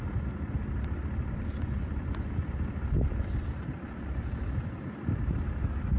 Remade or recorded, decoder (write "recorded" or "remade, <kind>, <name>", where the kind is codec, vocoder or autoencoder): recorded